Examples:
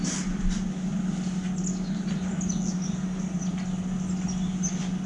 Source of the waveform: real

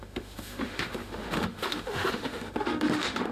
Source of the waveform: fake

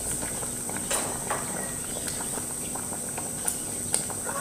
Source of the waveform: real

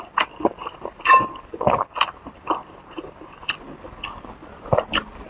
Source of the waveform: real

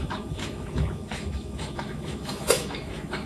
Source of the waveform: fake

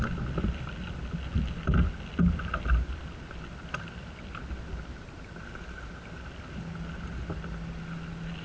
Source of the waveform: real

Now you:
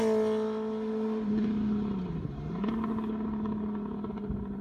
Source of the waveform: real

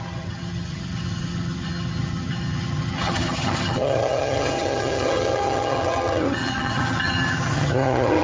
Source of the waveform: fake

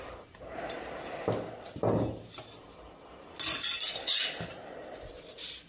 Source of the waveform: real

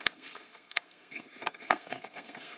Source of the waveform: fake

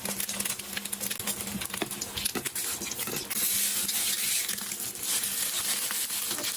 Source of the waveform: real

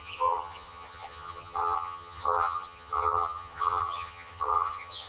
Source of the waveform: fake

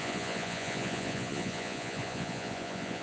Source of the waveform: fake